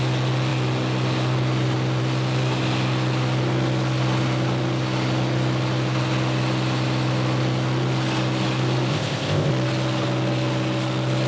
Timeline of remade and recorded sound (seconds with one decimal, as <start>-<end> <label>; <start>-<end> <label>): 0.0-8.9 recorded; 8.9-9.5 remade; 9.5-11.3 recorded